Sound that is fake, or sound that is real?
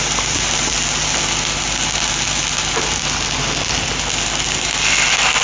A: real